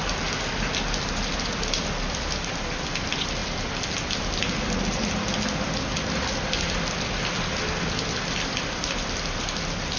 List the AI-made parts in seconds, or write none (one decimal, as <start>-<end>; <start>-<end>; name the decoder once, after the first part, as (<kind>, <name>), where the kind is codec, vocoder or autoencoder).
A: none